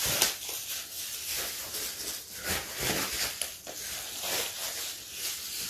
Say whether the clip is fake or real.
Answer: real